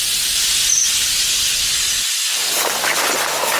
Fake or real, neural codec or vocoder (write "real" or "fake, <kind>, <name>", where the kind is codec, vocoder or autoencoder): real